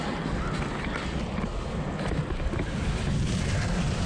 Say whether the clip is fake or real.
real